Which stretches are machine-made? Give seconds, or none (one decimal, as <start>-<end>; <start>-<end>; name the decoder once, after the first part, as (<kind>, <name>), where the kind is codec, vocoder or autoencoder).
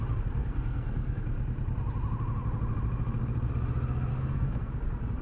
0.4-1.2 (codec, SNAC); 4.1-4.7